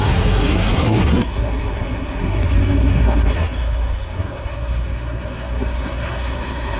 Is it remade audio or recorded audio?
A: remade